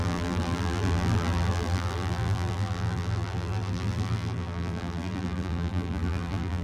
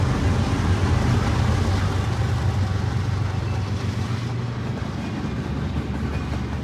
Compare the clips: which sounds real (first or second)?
second